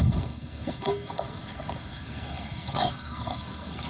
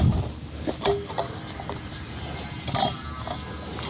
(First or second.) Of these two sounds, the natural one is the second